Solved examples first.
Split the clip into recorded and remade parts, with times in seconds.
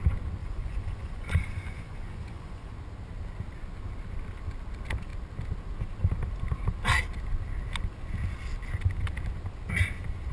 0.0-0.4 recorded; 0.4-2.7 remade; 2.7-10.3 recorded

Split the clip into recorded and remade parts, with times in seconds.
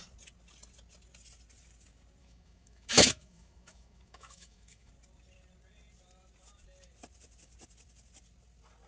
0.0-2.2 recorded; 2.2-4.9 remade; 4.9-8.9 recorded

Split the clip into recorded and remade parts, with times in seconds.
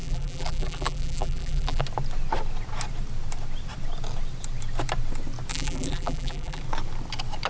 0.0-1.8 remade; 1.8-5.5 recorded; 5.5-6.6 remade; 6.6-7.5 recorded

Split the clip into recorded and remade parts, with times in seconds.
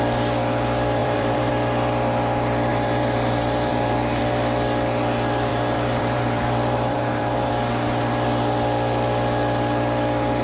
0.0-1.0 recorded; 1.0-1.5 remade; 1.5-2.7 recorded; 2.7-4.2 remade; 4.2-5.5 recorded; 5.5-7.5 remade; 7.5-10.4 recorded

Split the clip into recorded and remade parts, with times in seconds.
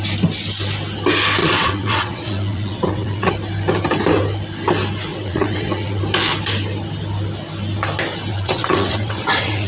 0.0-1.4 recorded; 1.4-3.3 remade; 3.3-5.1 recorded; 5.1-6.0 remade; 6.0-8.3 recorded; 8.3-9.7 remade